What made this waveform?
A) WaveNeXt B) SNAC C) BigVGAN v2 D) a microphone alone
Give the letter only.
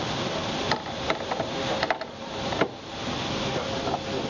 D